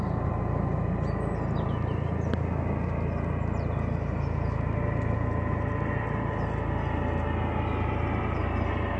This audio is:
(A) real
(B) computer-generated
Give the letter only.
A